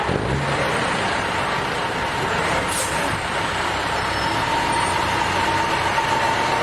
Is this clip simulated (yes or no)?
no